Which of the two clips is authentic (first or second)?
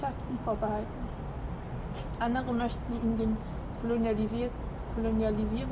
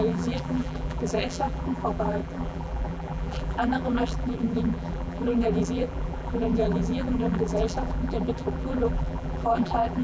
first